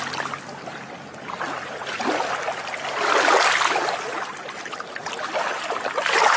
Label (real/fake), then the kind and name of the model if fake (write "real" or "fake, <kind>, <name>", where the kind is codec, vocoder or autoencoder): real